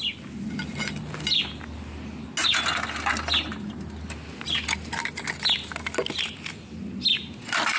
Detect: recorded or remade recorded